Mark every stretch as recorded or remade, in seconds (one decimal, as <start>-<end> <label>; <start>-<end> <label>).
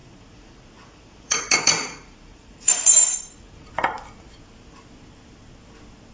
0.0-3.7 remade; 3.7-6.1 recorded